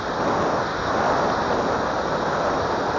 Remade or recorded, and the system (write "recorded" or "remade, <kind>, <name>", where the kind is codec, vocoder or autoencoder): recorded